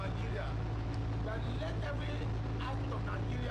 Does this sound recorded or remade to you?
recorded